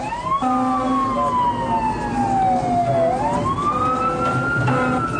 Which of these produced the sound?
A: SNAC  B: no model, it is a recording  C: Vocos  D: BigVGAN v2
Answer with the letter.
B